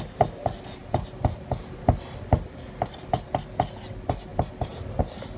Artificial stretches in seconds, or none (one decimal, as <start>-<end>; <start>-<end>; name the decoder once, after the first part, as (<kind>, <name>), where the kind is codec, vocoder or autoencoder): none

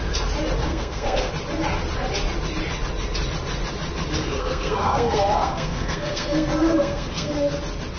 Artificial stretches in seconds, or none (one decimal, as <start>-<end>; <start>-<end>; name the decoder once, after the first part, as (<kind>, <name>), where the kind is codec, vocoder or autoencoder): 0.7-1.3 (codec, SNAC); 4.2-7.6

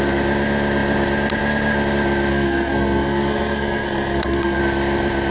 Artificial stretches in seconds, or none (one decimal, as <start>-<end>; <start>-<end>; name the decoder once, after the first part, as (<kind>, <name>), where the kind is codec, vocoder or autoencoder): 2.3-4.6 (codec, SNAC)

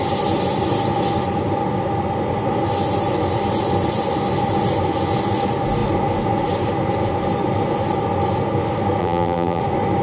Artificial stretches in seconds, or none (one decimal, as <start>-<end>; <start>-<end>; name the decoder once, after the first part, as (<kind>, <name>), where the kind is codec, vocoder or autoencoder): 9.0-9.6 (vocoder, BigVGAN v2)

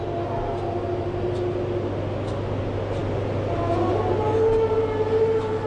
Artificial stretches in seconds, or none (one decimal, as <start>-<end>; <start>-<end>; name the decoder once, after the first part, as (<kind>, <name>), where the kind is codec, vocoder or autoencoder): none

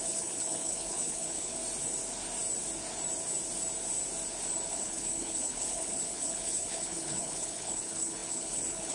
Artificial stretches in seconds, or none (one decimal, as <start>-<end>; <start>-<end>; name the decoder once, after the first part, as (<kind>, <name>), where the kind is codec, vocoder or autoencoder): 0.0-1.6 (codec, HILCodec); 4.7-8.9

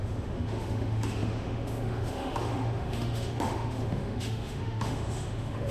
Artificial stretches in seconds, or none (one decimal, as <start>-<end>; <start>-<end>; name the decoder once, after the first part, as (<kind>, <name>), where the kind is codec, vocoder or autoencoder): 0.0-5.7 (autoencoder, DAC-VAE)

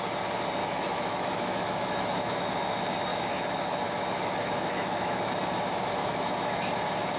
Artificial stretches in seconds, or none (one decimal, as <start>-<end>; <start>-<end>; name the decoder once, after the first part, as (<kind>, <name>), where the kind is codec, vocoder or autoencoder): 0.6-2.4 (autoencoder, DAC-VAE); 3.1-5.5; 6.0-6.6